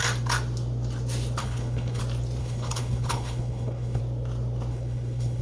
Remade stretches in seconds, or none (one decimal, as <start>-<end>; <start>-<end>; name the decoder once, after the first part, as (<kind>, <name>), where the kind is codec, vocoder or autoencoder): 1.4-2.0 (codec, HILCodec); 2.4-4.0; 4.7-5.4